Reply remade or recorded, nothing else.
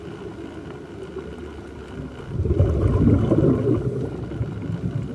recorded